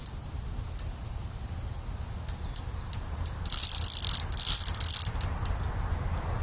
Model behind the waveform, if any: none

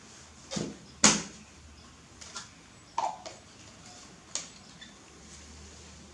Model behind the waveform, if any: none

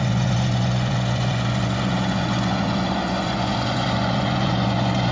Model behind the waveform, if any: vocoder, Vocos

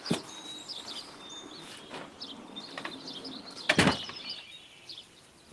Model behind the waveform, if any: vocoder, BigVGAN v2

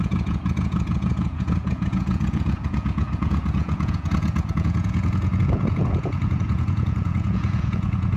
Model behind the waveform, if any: vocoder, Vocos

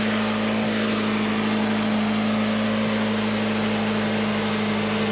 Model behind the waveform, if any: none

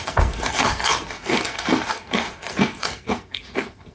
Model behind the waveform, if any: codec, SNAC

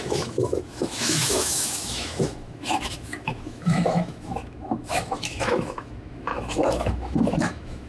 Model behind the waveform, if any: autoencoder, DAC-VAE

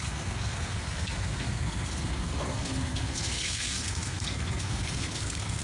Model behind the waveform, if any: codec, SNAC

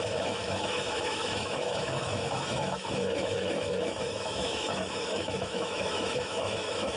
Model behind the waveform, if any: autoencoder, DAC-VAE